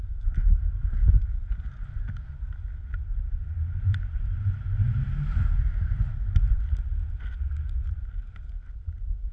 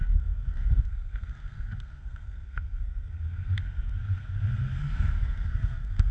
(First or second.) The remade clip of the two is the second